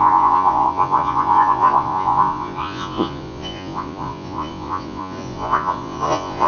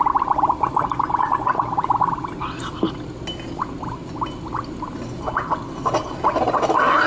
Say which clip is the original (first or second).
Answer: second